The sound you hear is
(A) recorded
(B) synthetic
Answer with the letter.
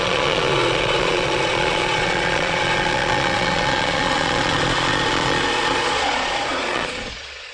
B